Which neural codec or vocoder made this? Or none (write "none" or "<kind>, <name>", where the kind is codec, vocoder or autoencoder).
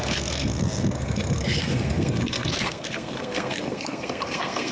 codec, SNAC